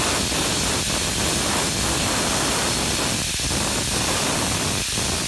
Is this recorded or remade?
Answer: recorded